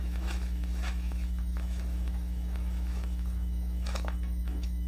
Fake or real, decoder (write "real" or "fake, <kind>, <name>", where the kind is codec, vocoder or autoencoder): fake, autoencoder, DAC-VAE